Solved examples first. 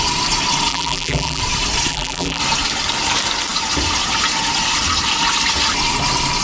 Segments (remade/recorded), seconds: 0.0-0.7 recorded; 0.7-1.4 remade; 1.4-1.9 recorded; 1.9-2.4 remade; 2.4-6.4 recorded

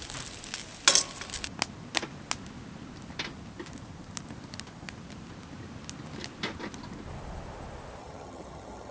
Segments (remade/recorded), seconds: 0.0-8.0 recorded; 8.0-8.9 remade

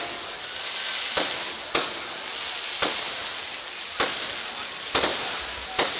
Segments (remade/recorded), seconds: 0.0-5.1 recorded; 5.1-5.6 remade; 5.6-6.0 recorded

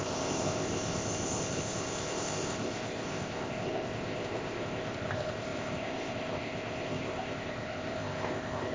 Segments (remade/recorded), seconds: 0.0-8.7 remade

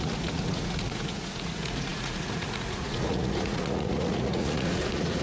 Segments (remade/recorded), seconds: 0.0-5.2 remade